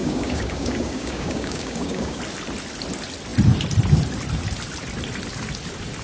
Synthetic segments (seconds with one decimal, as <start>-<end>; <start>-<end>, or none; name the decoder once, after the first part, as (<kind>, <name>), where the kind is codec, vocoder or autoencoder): 0.0-2.2 (codec, DAC)